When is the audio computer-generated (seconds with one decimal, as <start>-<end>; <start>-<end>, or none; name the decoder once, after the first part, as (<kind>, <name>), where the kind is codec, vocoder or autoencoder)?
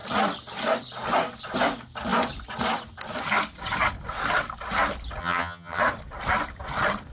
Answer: 5.2-5.8 (vocoder, HiFi-GAN)